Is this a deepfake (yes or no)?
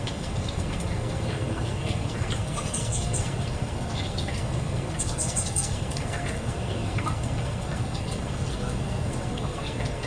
yes